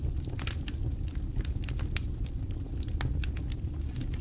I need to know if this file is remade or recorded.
recorded